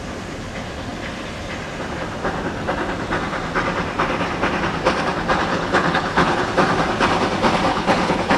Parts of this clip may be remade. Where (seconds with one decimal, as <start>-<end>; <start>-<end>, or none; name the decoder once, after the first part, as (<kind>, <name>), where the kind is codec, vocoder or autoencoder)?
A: 5.5-6.5 (codec, HILCodec); 7.7-8.4